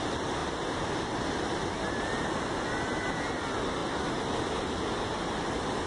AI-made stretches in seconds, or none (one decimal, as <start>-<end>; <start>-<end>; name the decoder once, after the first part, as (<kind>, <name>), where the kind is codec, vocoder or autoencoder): none